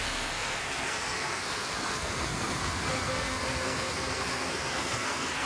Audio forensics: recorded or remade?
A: remade